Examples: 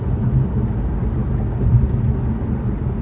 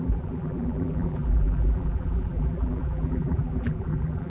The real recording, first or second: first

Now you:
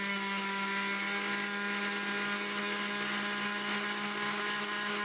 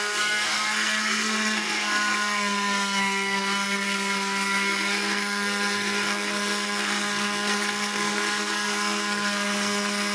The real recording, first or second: first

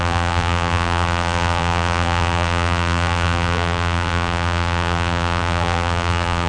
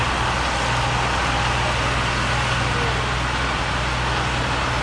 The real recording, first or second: second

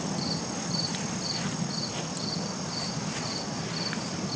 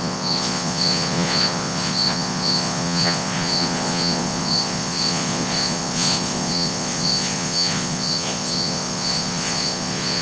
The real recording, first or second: first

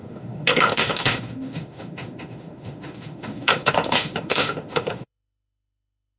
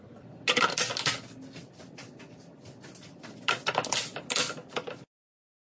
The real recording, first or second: second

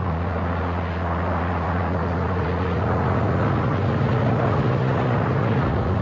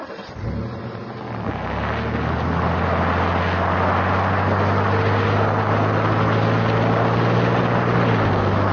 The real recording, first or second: second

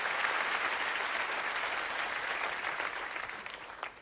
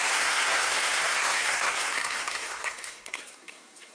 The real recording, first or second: first